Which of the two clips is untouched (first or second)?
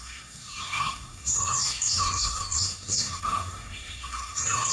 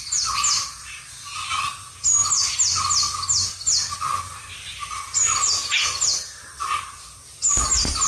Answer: second